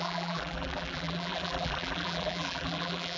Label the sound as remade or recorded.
remade